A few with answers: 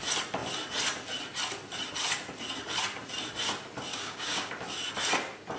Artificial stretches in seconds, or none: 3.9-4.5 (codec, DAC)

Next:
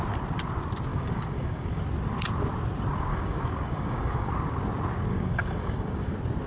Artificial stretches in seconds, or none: 0.9-1.8 (codec, DAC); 3.1-4.3; 5.1-6.1

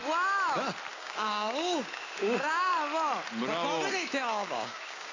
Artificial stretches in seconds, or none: 0.9-2.7 (codec, DAC); 3.9-5.1

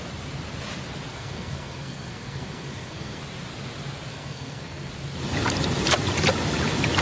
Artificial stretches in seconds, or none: 1.1-3.2 (codec, SNAC); 4.1-4.9